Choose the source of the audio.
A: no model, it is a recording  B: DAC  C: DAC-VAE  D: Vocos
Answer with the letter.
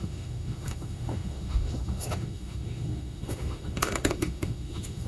C